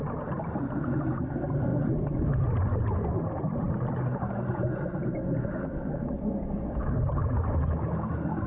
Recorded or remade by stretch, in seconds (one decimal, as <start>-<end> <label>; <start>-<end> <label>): 0.0-8.5 recorded